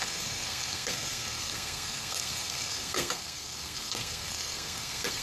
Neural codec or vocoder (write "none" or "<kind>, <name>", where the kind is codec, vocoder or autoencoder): codec, SNAC